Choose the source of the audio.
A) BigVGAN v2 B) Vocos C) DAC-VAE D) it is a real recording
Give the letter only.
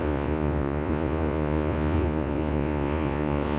B